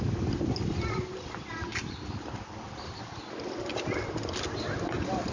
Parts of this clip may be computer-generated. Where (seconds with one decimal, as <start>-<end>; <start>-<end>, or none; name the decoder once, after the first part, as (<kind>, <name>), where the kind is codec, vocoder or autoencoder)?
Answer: none